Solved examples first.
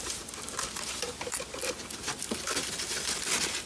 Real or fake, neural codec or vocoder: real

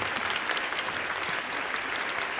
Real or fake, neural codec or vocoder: real